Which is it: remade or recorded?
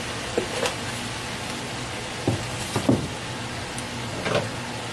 recorded